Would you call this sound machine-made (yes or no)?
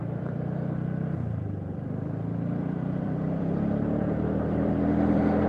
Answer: yes